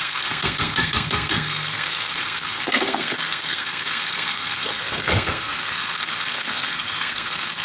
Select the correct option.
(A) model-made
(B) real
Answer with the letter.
A